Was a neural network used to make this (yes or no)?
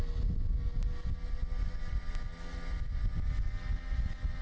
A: no